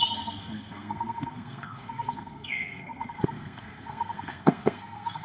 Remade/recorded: remade